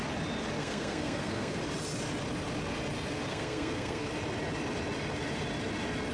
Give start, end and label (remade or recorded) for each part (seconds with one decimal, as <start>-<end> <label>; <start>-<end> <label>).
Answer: 0.0-0.6 recorded; 0.6-1.6 remade; 1.6-3.3 recorded; 3.3-4.1 remade; 4.1-6.1 recorded